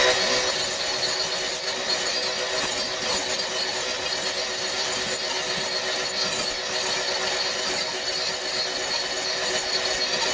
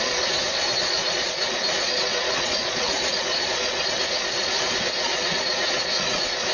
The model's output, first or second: second